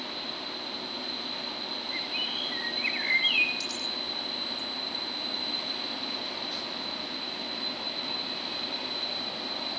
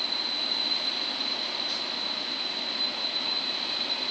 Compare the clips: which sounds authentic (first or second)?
first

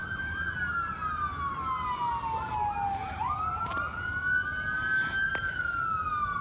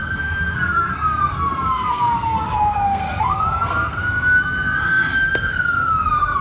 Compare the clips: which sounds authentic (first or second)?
first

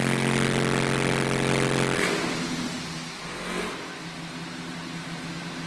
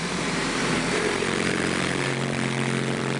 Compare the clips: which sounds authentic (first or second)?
first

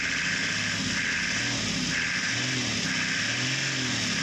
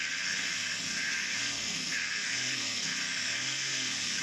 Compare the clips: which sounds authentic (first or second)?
first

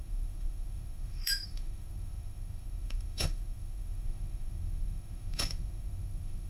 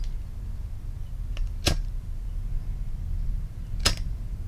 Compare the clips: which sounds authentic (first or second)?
second